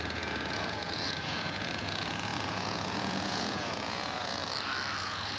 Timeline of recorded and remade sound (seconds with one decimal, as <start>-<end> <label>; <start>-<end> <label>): 0.0-4.4 remade; 4.4-5.0 recorded; 5.0-5.4 remade